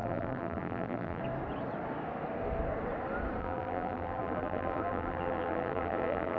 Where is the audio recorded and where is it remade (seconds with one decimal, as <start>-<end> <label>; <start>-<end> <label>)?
0.0-1.2 remade; 1.2-3.4 recorded; 3.4-6.4 remade